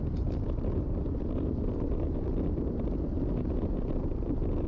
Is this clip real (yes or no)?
yes